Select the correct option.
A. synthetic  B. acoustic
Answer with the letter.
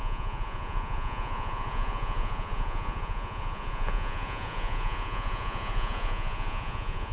A